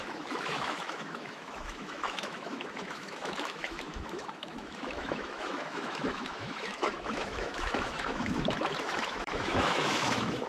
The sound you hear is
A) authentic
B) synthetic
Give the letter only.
B